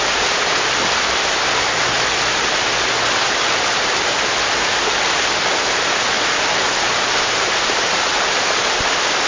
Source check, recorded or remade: recorded